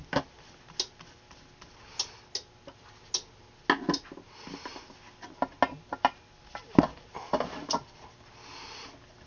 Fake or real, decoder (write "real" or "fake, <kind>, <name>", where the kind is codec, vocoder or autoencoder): real